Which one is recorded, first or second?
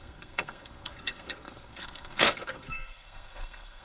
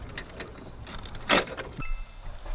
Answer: second